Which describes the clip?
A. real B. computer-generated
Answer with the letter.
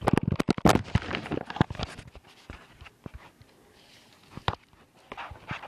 A